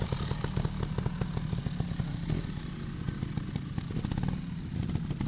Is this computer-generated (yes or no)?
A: no